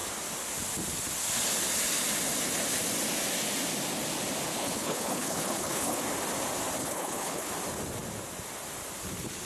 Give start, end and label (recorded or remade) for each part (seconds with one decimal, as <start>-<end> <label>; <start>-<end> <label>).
0.0-4.5 recorded; 4.5-6.0 remade; 6.0-6.8 recorded; 6.8-7.5 remade; 7.5-9.5 recorded